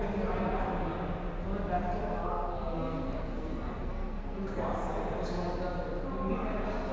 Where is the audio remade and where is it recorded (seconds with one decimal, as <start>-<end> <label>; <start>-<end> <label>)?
0.0-2.0 recorded; 2.0-4.6 remade; 4.6-6.9 recorded